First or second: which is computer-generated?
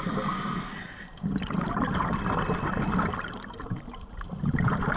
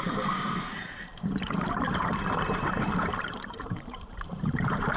second